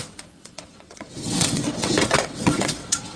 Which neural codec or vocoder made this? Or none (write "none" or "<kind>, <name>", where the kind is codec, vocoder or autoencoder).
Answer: vocoder, WaveNeXt